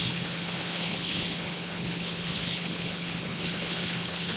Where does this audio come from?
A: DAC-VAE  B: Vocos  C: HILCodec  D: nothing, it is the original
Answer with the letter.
C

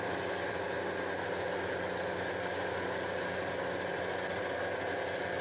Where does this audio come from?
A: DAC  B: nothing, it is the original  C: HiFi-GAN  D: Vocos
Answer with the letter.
B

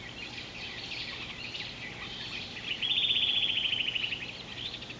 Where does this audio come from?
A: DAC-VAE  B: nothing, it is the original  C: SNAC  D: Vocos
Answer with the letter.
B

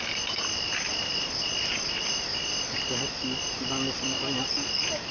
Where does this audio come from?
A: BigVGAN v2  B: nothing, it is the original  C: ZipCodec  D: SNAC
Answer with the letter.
B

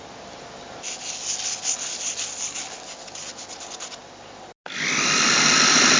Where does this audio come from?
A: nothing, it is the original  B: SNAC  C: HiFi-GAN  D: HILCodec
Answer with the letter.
A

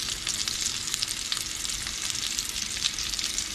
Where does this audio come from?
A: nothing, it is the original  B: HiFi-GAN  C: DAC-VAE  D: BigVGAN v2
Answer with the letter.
A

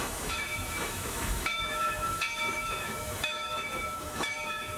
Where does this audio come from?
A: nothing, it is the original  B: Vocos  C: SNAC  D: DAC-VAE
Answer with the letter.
D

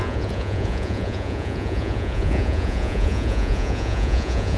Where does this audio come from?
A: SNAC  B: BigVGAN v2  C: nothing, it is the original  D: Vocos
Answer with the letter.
D